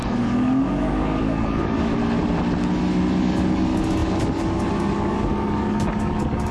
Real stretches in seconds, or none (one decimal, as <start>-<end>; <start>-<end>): 2.0-3.2